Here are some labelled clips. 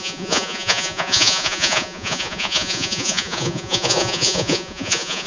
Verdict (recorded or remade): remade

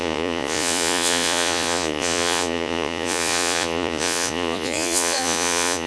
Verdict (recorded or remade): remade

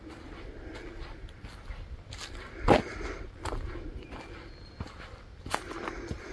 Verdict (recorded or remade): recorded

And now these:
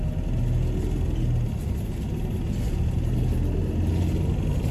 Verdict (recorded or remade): recorded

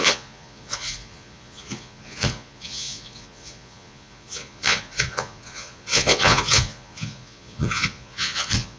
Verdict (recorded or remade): remade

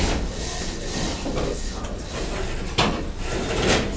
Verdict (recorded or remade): recorded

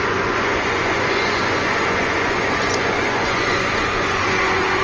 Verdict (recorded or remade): remade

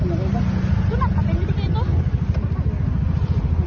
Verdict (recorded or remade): recorded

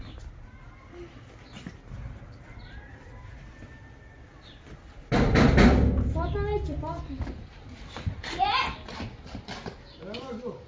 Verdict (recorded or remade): recorded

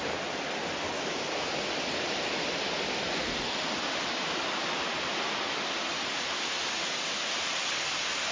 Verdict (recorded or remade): recorded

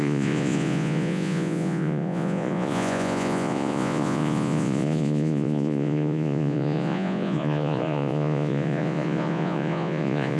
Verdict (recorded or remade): remade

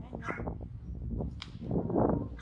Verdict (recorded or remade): recorded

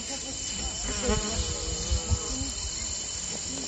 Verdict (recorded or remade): recorded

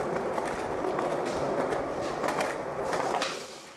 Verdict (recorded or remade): recorded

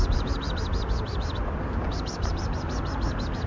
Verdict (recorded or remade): recorded